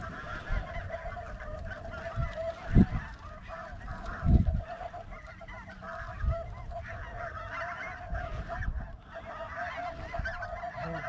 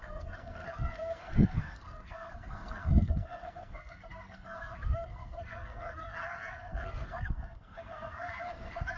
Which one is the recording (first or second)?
first